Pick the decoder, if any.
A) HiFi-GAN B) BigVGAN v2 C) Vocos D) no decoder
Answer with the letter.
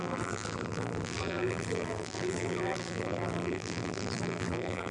B